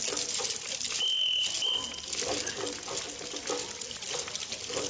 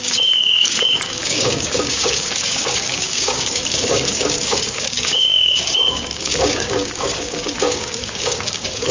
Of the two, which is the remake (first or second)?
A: second